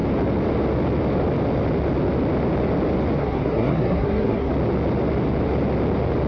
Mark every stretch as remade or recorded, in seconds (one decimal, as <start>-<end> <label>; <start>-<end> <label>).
0.0-3.2 recorded; 3.2-4.5 remade; 4.5-6.3 recorded

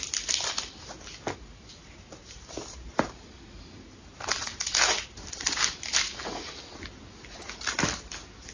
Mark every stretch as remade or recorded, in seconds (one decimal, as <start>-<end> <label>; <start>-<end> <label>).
0.0-2.2 recorded; 2.2-3.2 remade; 3.2-4.4 recorded; 4.4-6.5 remade; 6.5-8.5 recorded